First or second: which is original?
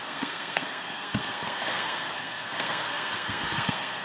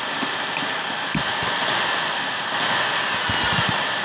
second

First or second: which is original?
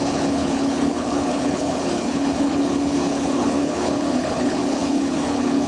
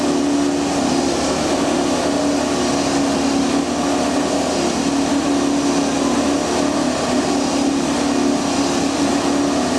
second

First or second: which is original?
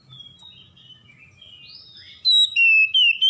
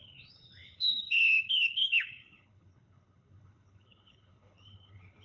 first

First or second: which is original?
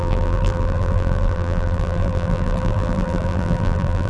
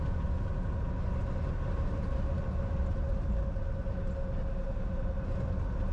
second